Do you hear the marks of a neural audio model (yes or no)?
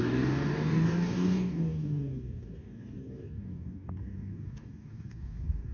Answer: yes